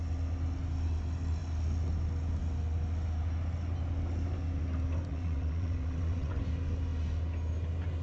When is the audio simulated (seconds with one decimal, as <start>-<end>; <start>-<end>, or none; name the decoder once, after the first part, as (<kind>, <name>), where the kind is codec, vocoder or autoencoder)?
5.1-6.4 (vocoder, WaveNeXt)